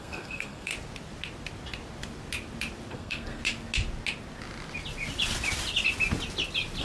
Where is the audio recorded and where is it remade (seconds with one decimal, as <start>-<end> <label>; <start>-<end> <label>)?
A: 0.0-0.7 remade; 0.7-2.9 recorded; 2.9-3.4 remade; 3.4-6.8 recorded